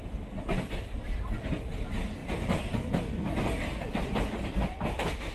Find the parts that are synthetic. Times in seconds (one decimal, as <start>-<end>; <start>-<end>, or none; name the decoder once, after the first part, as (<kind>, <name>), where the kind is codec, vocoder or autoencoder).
none